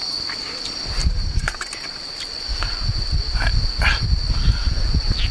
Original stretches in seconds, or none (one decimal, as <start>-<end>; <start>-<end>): 0.0-1.0; 2.4-5.3